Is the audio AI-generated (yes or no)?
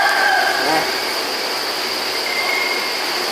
no